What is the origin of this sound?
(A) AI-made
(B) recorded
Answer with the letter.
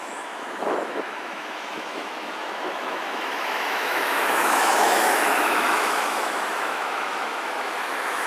A